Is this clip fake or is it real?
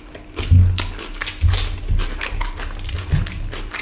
real